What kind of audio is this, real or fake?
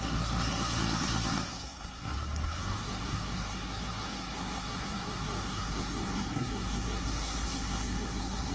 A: fake